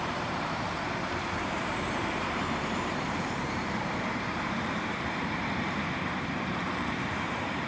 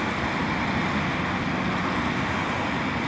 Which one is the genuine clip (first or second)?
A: second